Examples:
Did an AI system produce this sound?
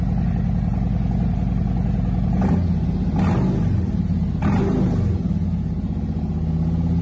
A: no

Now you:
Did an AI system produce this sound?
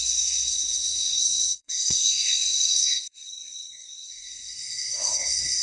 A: yes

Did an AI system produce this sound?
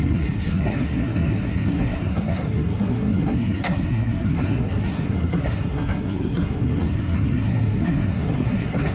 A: yes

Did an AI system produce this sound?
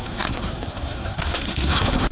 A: yes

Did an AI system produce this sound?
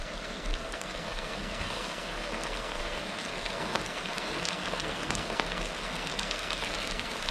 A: yes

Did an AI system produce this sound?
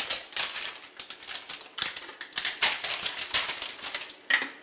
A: no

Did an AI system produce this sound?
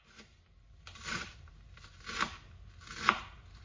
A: no